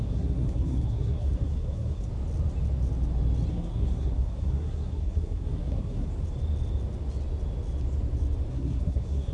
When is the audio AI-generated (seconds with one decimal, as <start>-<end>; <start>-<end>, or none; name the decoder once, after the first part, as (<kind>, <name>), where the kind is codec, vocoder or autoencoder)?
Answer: 0.0-2.1 (codec, SNAC); 3.5-6.1; 8.5-9.3

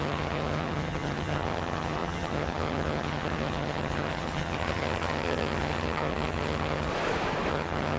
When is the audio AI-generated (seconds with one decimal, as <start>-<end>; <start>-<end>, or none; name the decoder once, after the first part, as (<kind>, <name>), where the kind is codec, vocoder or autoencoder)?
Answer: 0.0-6.9 (vocoder, HiFi-GAN); 7.5-8.0